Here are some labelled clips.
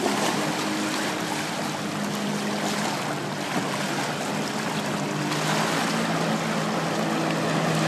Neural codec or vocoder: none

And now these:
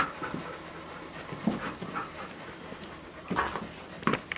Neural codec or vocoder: none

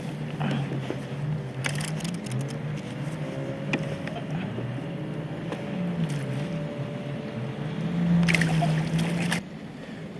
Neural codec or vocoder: none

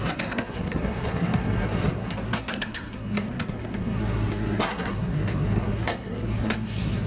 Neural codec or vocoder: codec, SNAC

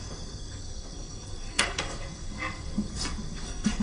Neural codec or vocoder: codec, SNAC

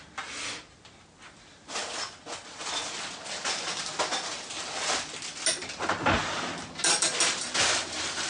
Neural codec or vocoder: none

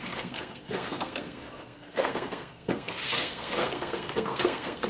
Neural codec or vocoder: codec, SNAC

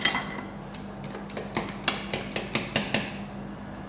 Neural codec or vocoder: none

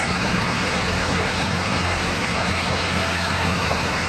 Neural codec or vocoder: codec, SNAC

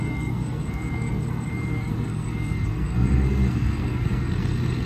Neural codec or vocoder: codec, SNAC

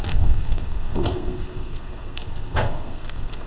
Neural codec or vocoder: codec, SNAC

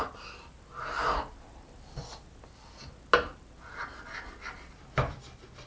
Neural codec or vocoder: none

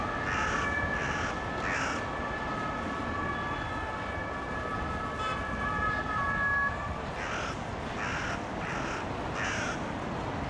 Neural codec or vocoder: none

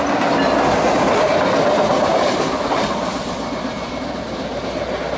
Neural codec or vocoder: none